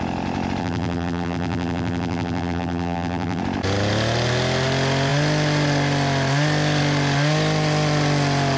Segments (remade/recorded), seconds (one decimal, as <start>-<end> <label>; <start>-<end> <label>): 0.0-0.6 recorded; 0.6-3.4 remade; 3.4-8.6 recorded